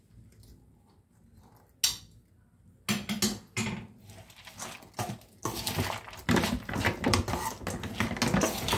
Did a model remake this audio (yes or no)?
no